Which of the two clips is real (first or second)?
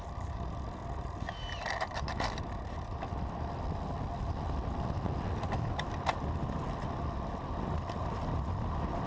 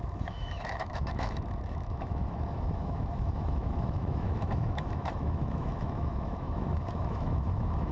first